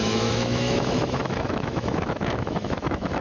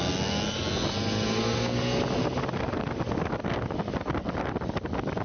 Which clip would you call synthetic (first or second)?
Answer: first